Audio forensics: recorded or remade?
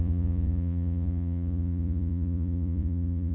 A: remade